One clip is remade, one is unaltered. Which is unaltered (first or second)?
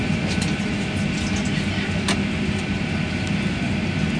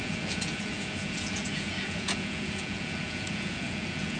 first